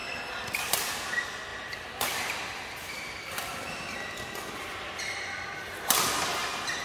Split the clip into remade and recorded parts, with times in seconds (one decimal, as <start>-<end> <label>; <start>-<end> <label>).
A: 0.0-0.8 remade; 0.8-1.5 recorded; 1.5-5.0 remade; 5.0-6.8 recorded